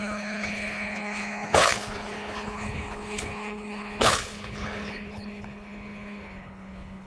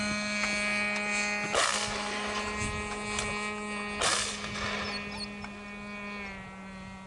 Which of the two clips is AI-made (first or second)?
first